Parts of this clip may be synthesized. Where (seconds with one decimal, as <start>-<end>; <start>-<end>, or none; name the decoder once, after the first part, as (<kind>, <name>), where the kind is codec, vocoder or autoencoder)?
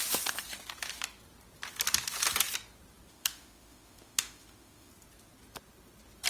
3.1-4.9 (autoencoder, DAC-VAE)